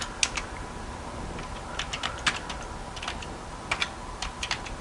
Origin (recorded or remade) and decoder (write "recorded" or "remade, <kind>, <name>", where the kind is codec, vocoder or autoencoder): recorded